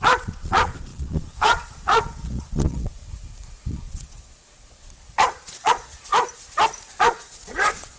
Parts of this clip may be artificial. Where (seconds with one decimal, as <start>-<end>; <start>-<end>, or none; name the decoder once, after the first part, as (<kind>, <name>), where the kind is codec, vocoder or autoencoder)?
0.0-3.0 (vocoder, Vocos); 3.7-6.1; 7.0-8.0